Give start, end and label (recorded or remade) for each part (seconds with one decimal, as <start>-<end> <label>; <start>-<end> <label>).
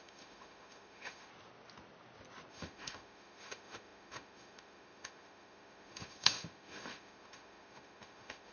0.0-1.3 remade; 1.3-2.5 recorded; 2.5-8.5 remade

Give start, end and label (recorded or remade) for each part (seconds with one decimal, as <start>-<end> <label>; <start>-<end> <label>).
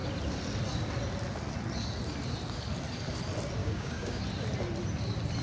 0.0-3.6 recorded; 3.6-4.2 remade; 4.2-5.4 recorded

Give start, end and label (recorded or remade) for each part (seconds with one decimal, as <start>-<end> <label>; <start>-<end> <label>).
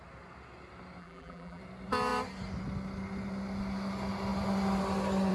0.0-1.0 recorded; 1.0-1.6 remade; 1.6-5.3 recorded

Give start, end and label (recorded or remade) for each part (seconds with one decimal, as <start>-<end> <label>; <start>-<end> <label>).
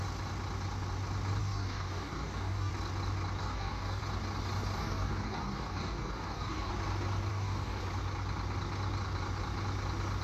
0.0-1.4 recorded; 1.4-2.7 remade; 2.7-3.4 recorded; 3.4-4.0 remade; 4.0-4.8 recorded; 4.8-6.7 remade; 6.7-7.3 recorded; 7.3-7.8 remade; 7.8-10.2 recorded